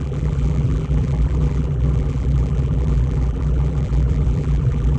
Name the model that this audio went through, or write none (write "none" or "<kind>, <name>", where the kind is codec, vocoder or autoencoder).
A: vocoder, BigVGAN v2